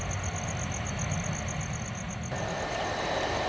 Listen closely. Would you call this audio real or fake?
real